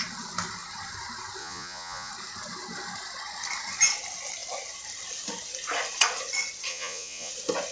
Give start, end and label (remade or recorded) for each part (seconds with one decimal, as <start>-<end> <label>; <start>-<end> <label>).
0.0-1.4 recorded; 1.4-2.1 remade; 2.1-6.7 recorded; 6.7-7.3 remade; 7.3-7.7 recorded